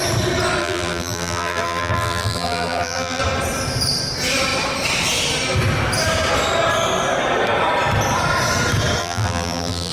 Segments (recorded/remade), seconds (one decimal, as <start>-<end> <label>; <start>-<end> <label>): 0.0-0.6 recorded; 0.6-3.2 remade; 3.2-9.0 recorded; 9.0-9.9 remade